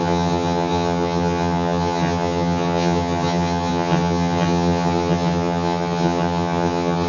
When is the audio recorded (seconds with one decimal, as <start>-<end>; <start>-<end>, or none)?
none